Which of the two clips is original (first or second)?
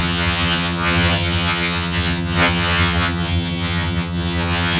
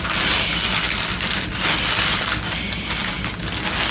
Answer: second